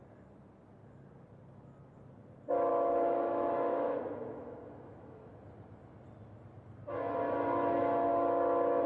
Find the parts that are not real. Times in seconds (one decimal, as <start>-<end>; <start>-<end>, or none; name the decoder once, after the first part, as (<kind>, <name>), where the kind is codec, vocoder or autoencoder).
2.7-5.3 (autoencoder, DAC-VAE)